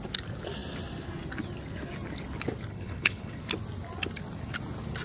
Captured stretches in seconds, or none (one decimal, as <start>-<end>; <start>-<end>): 0.0-2.7; 3.4-5.0